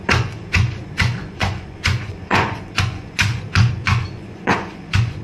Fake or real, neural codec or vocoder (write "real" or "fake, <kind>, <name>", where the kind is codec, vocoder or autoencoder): fake, vocoder, Vocos